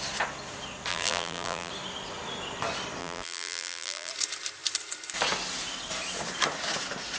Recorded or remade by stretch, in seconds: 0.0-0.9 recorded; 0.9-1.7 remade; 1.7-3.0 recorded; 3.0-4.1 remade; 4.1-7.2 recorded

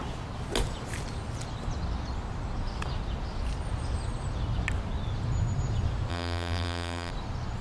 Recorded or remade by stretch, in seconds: 0.0-6.1 recorded; 6.1-7.1 remade; 7.1-7.6 recorded

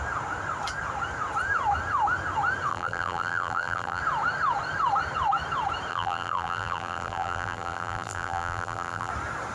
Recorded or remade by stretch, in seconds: 0.0-2.7 recorded; 2.7-4.0 remade; 4.0-5.9 recorded; 5.9-9.1 remade; 9.1-9.5 recorded

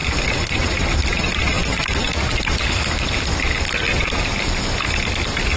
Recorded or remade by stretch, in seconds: 0.0-3.4 remade; 3.4-3.9 recorded; 3.9-4.6 remade; 4.6-5.6 recorded

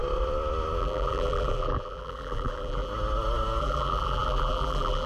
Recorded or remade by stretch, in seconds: 0.0-0.8 recorded; 0.8-2.9 remade; 2.9-3.6 recorded; 3.6-5.1 remade

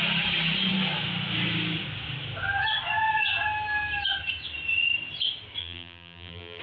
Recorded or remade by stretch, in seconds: 0.0-5.6 recorded; 5.6-6.6 remade

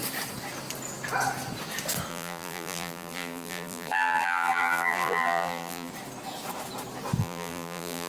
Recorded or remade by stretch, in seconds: 0.0-2.1 recorded; 2.1-5.9 remade; 5.9-7.2 recorded; 7.2-8.1 remade

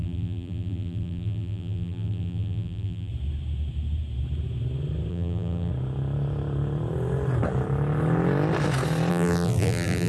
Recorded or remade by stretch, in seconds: 0.0-3.1 remade; 3.1-5.1 recorded; 5.1-5.7 remade; 5.7-9.1 recorded; 9.1-10.1 remade